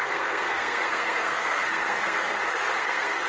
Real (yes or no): no